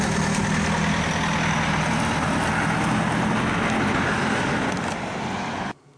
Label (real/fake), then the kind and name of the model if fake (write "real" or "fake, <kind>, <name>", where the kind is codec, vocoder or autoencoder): real